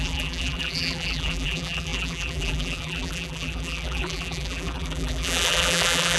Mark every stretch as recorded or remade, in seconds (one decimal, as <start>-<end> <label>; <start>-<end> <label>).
0.0-6.2 remade